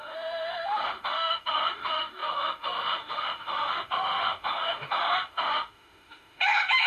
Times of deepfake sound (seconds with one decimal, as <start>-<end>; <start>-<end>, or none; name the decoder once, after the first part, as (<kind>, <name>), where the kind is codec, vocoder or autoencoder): 0.0-6.9 (autoencoder, DAC-VAE)